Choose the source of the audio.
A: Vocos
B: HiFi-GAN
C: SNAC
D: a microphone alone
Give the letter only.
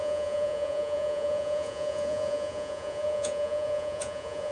A